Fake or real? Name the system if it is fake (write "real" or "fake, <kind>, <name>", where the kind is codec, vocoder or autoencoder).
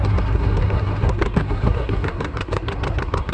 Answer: fake, codec, SNAC